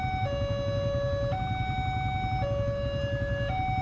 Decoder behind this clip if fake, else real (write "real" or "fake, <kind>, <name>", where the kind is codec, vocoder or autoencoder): real